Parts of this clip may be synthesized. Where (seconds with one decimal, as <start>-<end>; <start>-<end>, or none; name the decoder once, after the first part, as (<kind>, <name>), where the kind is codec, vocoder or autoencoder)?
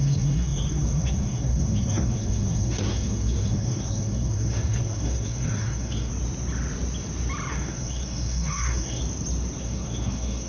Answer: 0.0-6.1 (codec, SNAC); 7.5-9.0; 9.6-10.5